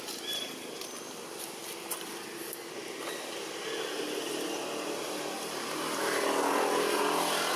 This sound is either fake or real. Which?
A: real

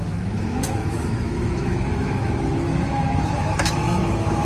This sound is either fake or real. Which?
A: fake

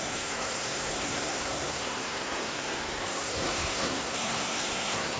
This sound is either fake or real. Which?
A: fake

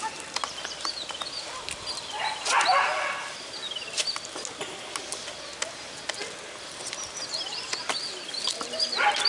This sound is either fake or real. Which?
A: real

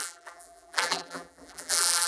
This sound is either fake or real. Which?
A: fake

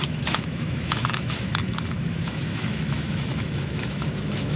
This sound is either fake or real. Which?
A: fake